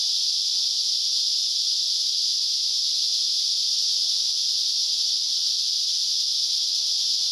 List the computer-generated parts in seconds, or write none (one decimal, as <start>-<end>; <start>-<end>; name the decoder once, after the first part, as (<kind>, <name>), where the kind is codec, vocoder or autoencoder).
0.0-3.0 (vocoder, BigVGAN v2)